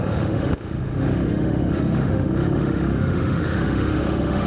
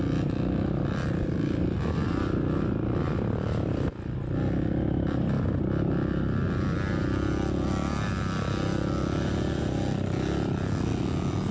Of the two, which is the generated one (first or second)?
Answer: first